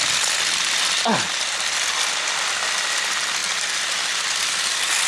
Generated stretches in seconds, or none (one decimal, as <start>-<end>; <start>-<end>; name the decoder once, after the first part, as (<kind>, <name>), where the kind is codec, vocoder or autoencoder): none